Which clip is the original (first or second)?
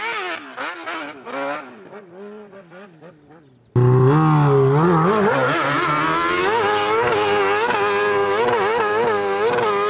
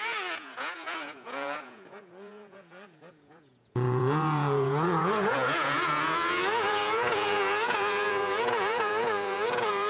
first